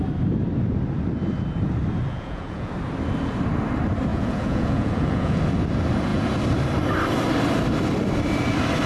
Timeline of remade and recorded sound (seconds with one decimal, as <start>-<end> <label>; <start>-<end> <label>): 0.0-2.1 recorded; 2.1-2.7 remade; 2.7-4.1 recorded; 4.1-5.4 remade; 5.4-8.9 recorded